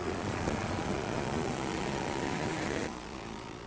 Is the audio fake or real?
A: fake